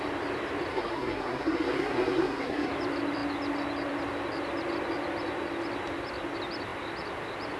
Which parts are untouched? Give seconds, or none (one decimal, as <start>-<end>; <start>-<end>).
0.0-0.7; 2.7-7.6